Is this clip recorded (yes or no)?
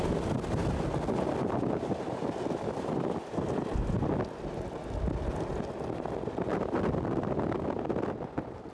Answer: yes